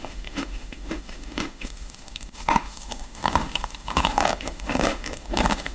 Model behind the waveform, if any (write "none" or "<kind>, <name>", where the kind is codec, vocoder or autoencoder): autoencoder, DAC-VAE